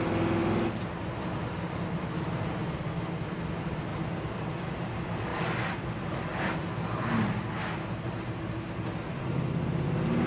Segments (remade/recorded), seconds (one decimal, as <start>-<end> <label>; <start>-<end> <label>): 0.0-5.3 recorded; 5.3-5.8 remade; 5.8-6.3 recorded; 6.3-7.5 remade; 7.5-10.3 recorded